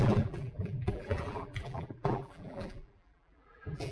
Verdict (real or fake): fake